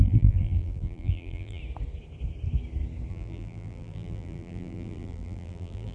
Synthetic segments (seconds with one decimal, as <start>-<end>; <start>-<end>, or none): 0.0-1.6; 3.1-5.9